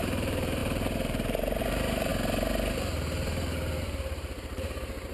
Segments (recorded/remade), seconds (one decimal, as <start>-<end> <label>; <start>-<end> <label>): 0.0-2.1 remade; 2.1-3.8 recorded; 3.8-5.1 remade